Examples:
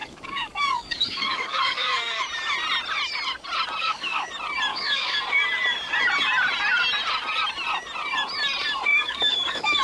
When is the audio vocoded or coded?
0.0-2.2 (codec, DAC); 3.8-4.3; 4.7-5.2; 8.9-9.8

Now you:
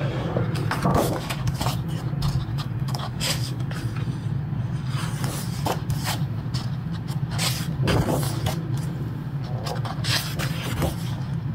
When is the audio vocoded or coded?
0.9-1.6 (codec, DAC); 2.5-3.7

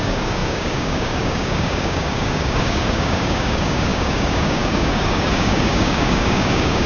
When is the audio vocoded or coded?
0.0-6.9 (codec, DAC)

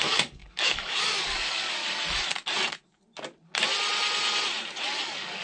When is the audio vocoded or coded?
0.0-1.8 (codec, DAC); 5.0-5.4

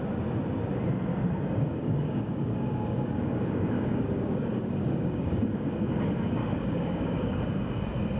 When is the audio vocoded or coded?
1.1-6.0 (codec, DAC); 6.4-7.4